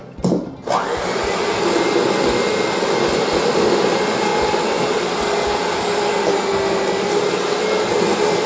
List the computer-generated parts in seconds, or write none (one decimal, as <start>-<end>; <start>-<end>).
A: 3.3-4.3; 8.0-8.5